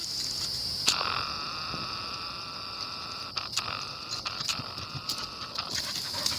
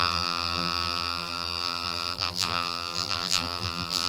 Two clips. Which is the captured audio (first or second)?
first